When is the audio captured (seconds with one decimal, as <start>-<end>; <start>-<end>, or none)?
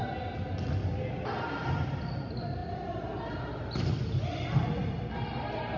0.0-5.8